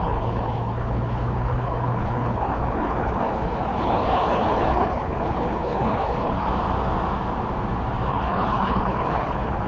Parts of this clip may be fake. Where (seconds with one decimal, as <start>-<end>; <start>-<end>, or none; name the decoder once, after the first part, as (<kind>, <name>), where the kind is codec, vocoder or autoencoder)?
0.0-6.5 (codec, HILCodec); 8.1-9.7